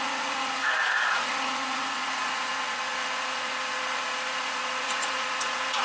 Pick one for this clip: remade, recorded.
remade